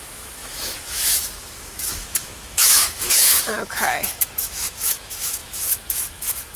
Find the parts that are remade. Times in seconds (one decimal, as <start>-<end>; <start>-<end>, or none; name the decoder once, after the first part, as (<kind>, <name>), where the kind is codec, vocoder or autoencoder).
0.0-6.6 (autoencoder, DAC-VAE)